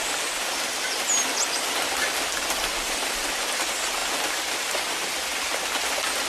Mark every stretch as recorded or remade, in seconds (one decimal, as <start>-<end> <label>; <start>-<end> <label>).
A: 0.0-6.3 recorded